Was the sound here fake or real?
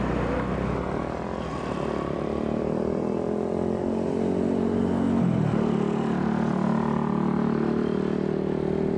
real